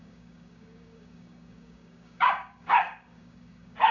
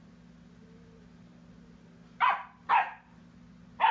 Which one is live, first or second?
second